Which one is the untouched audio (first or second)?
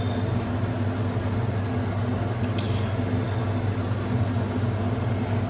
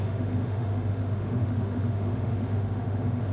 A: first